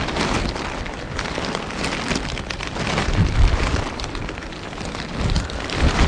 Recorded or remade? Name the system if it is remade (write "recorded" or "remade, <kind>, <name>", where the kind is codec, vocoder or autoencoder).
remade, vocoder, BigVGAN v2